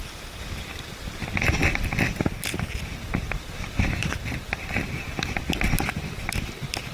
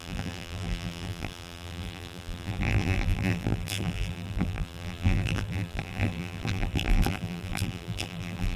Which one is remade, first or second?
second